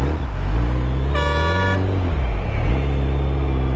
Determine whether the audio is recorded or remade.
recorded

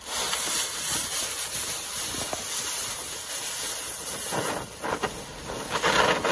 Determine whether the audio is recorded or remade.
recorded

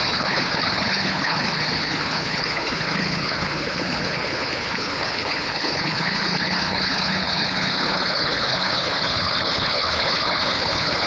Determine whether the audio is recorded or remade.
remade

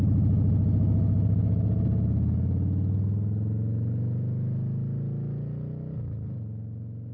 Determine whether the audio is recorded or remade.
recorded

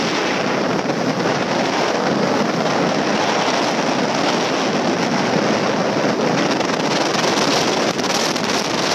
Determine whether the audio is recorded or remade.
recorded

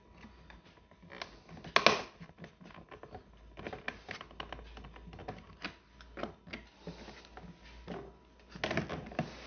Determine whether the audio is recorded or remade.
recorded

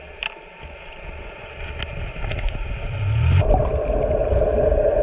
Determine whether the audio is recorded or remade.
recorded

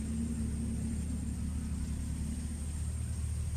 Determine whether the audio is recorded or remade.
recorded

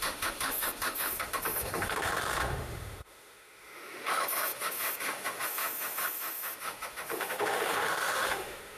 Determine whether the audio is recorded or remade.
remade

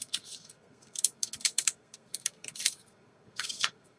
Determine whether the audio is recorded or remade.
remade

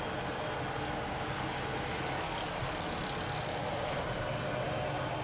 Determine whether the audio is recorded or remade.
recorded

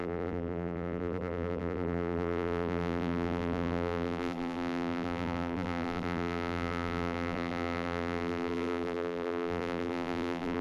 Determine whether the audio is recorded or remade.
remade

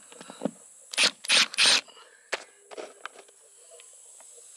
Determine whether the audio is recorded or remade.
recorded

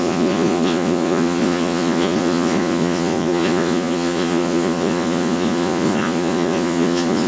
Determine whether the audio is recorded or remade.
remade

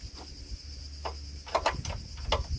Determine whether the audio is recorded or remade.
recorded